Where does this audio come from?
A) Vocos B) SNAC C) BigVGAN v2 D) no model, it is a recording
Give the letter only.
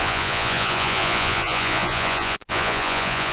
A